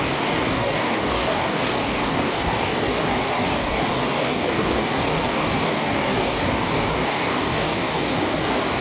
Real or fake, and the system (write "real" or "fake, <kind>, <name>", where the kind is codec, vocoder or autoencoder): fake, codec, DAC